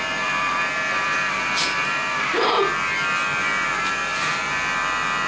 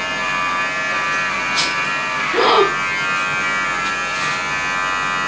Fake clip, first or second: first